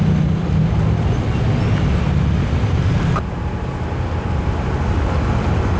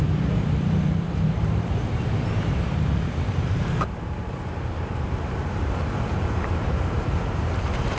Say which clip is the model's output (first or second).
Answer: second